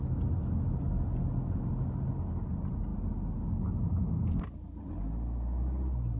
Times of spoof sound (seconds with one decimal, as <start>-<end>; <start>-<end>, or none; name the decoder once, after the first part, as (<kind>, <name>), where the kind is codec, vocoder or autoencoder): none